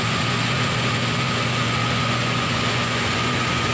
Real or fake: fake